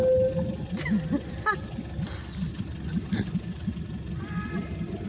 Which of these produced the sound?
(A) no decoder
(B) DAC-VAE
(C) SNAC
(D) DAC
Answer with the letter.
A